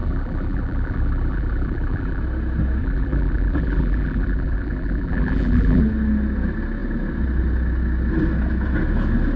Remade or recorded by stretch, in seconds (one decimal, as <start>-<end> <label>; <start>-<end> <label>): 0.0-2.2 remade; 2.2-2.8 recorded; 2.8-5.8 remade; 5.8-9.4 recorded